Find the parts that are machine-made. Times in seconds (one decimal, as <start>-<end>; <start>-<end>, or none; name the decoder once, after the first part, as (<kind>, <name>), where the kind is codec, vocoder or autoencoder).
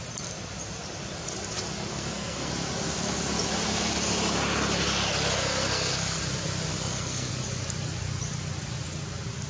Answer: 1.9-2.5 (codec, SNAC); 5.4-6.2; 6.7-7.3